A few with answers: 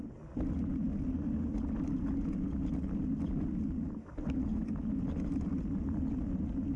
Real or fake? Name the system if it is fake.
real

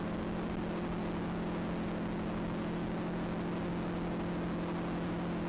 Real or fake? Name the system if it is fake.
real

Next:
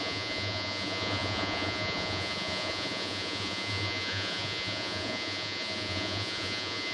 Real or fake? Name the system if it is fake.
fake, vocoder, Vocos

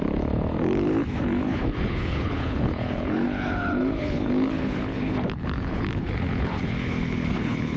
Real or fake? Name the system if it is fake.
fake, codec, HILCodec